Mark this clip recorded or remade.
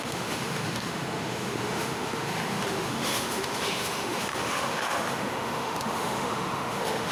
remade